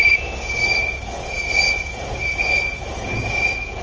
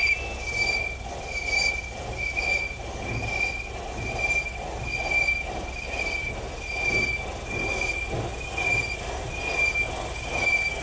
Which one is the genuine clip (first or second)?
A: second